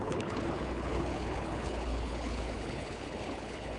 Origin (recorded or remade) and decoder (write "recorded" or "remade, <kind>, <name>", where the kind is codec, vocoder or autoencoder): remade, codec, HILCodec